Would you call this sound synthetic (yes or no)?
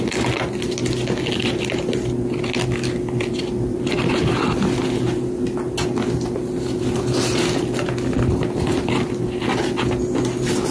no